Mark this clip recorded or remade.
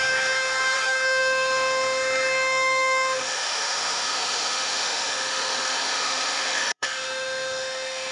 remade